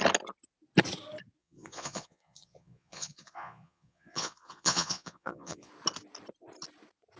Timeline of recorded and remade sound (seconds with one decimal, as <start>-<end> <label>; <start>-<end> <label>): 0.0-1.4 recorded; 1.4-5.7 remade; 5.7-7.2 recorded